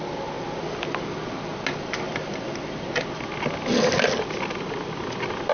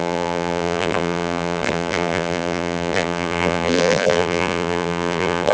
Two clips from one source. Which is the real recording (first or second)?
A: first